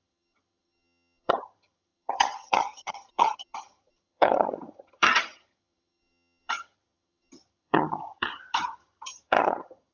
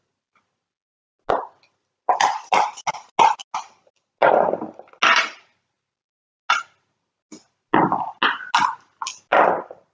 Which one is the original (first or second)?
second